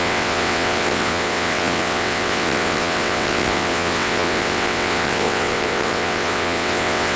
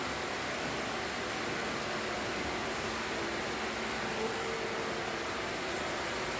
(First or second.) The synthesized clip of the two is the first